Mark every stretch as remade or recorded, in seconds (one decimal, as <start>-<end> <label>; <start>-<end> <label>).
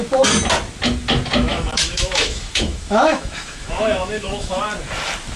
0.0-1.5 recorded; 1.5-4.6 remade; 4.6-5.4 recorded